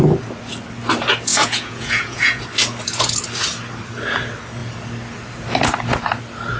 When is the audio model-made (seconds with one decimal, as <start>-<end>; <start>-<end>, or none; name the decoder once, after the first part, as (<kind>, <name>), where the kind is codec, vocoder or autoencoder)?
1.3-2.4 (vocoder, Vocos)